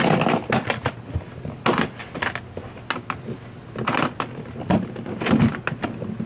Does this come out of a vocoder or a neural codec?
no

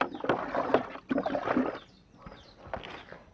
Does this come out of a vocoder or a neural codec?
no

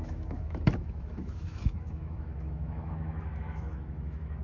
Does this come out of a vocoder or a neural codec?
yes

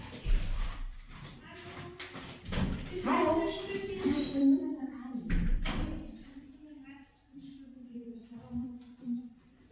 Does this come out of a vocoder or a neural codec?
yes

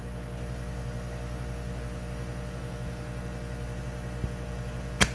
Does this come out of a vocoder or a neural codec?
no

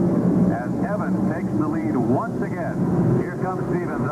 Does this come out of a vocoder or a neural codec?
yes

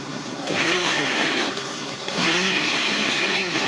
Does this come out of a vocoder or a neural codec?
yes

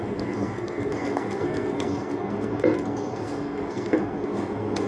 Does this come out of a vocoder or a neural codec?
yes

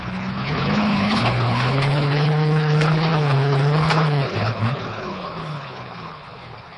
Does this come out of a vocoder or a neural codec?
yes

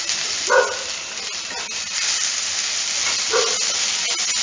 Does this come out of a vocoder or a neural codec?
no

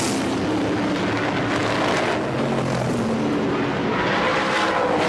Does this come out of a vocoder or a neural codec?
no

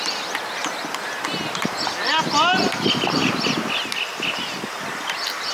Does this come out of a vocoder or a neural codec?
no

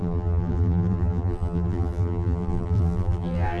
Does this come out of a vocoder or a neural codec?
yes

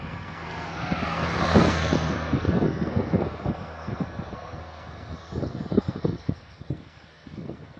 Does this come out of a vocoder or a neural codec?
yes